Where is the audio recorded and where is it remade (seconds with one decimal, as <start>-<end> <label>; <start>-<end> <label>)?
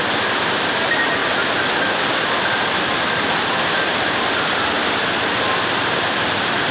0.0-6.7 recorded